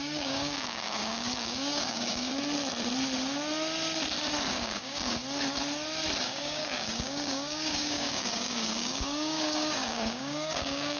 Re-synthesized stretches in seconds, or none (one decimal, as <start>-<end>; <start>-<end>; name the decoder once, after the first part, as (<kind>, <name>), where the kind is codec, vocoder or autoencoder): 0.0-2.3 (codec, DAC); 4.5-5.2; 6.2-11.0